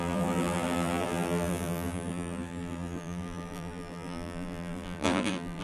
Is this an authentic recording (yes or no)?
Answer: no